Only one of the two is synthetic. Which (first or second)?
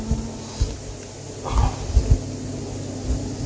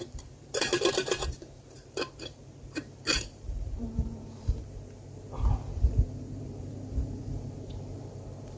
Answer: second